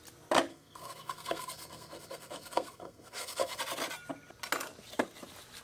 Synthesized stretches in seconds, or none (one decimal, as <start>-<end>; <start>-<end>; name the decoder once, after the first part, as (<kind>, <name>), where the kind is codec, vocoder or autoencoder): 0.5-3.6 (codec, SNAC)